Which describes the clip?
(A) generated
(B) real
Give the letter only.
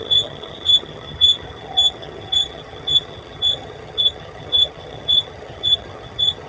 A